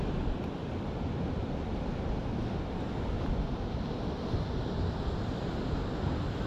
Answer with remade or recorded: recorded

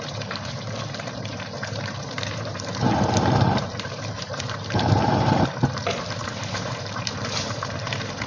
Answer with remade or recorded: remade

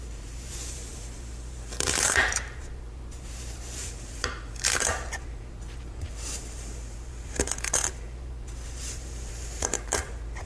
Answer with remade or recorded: remade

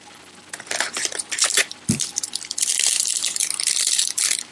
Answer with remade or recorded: remade